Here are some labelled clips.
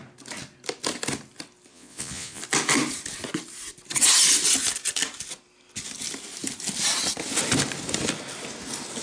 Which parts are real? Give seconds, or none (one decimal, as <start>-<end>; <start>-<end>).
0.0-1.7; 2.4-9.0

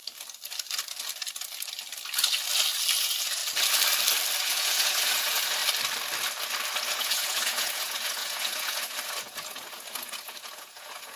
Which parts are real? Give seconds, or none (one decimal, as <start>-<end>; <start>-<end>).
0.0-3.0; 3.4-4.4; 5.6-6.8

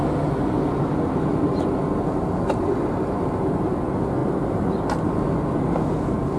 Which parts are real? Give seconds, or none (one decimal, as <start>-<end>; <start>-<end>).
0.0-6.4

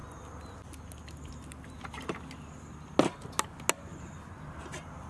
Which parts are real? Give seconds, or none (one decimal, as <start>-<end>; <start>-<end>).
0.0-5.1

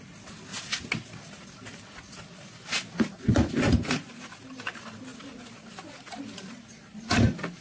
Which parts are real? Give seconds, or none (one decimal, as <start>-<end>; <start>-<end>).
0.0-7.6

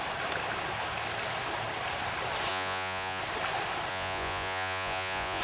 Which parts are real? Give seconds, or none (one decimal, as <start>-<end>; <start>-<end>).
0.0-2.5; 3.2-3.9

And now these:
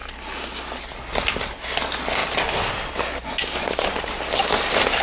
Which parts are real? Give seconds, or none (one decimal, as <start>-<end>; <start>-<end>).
0.0-5.0